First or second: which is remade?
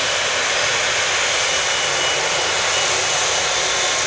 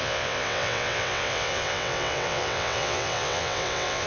second